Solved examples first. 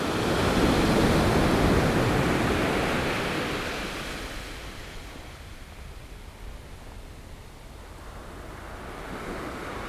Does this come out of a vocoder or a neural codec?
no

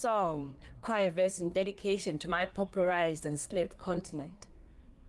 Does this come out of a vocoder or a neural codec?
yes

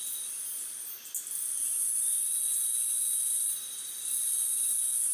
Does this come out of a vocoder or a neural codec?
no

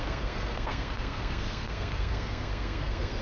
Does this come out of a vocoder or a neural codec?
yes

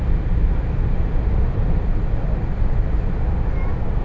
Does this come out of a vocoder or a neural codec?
no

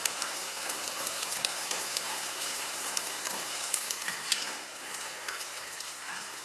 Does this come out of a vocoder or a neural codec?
yes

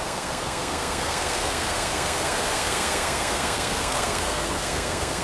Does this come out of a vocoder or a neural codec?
yes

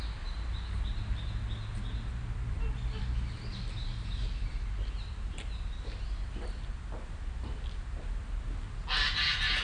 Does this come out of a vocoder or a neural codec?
no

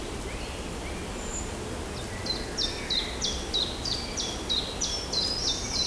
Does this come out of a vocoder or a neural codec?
no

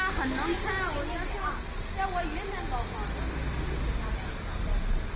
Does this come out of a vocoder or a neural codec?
no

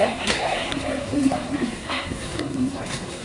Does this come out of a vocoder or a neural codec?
yes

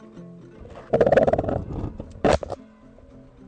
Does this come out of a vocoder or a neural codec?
no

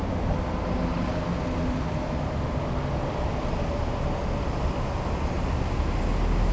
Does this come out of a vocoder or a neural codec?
no